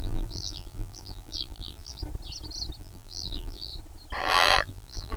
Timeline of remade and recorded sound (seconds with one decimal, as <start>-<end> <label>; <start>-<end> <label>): 0.0-2.0 remade; 2.0-2.8 recorded; 2.8-3.7 remade; 3.7-4.2 recorded; 4.2-5.2 remade